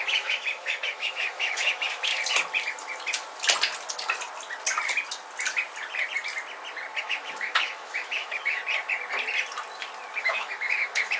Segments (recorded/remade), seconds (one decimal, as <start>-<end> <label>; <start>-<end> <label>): 0.0-2.1 remade; 2.1-7.0 recorded; 7.0-8.6 remade; 8.6-10.2 recorded; 10.2-11.2 remade

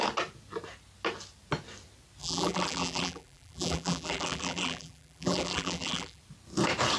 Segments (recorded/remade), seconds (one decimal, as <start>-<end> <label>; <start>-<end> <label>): 0.0-2.2 recorded; 2.2-6.2 remade; 6.2-7.0 recorded

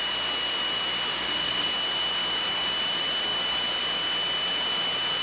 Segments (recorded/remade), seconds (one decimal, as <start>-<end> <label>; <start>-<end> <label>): 0.0-1.1 recorded; 1.1-1.7 remade; 1.7-5.2 recorded

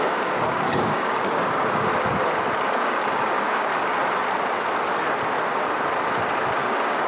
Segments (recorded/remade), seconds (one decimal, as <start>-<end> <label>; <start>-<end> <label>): 0.0-1.9 remade; 1.9-2.7 recorded; 2.7-3.7 remade; 3.7-6.6 recorded; 6.6-7.1 remade